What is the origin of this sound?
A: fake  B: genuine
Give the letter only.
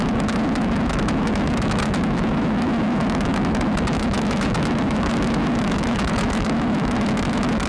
A